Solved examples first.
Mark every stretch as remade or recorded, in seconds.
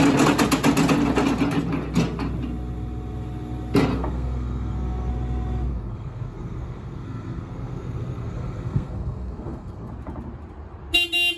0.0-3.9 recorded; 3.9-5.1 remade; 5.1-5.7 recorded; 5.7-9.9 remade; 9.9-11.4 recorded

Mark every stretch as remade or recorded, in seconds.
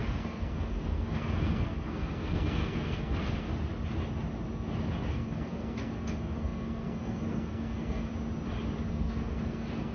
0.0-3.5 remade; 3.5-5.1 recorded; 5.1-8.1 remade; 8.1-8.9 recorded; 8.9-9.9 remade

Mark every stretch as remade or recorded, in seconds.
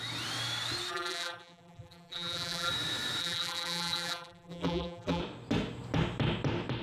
0.0-0.9 recorded; 0.9-2.7 remade; 2.7-3.2 recorded; 3.2-5.2 remade; 5.2-6.8 recorded